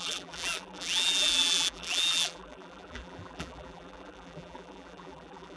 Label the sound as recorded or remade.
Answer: remade